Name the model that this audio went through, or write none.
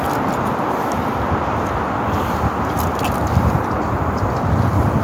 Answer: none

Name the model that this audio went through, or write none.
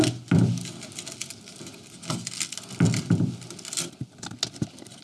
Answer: none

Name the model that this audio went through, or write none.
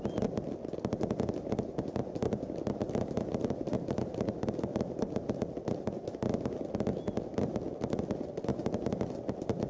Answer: none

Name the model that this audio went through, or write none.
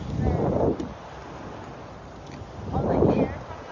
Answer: none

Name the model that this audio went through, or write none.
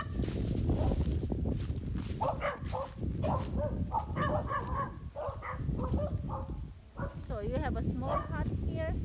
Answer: none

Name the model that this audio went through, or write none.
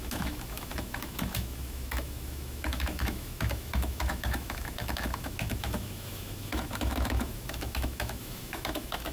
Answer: autoencoder, DAC-VAE